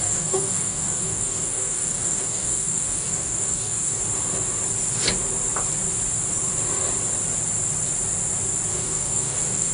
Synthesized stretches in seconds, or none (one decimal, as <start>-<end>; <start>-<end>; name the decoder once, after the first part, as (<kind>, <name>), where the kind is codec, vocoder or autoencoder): 0.0-4.0 (codec, DAC); 8.7-9.7